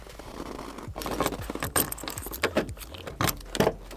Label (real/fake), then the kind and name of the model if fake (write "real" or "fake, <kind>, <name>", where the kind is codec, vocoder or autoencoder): real